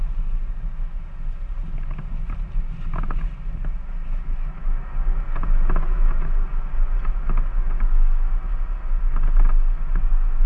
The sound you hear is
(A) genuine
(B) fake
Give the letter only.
A